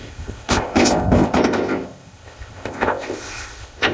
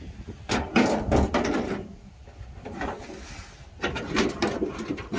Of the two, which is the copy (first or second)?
first